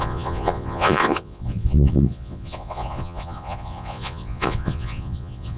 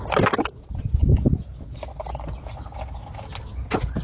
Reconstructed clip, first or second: first